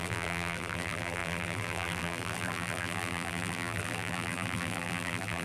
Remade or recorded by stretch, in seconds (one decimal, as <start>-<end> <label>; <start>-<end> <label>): 0.0-5.4 remade

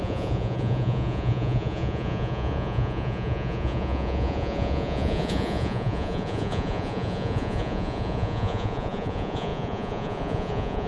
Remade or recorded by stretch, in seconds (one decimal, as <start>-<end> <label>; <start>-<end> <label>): 0.0-10.9 remade

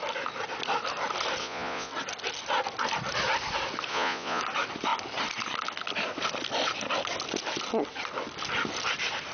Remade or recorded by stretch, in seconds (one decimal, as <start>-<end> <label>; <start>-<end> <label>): 0.0-1.4 recorded; 1.4-1.9 remade; 1.9-3.9 recorded; 3.9-4.4 remade; 4.4-9.3 recorded

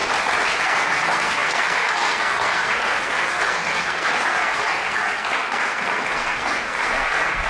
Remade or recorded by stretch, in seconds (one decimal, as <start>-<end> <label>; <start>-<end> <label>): 0.0-0.6 recorded; 0.6-7.5 remade

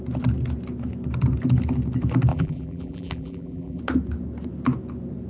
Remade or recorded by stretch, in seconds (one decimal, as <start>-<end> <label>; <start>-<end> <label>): 0.0-2.3 recorded; 2.3-3.8 remade; 3.8-5.3 recorded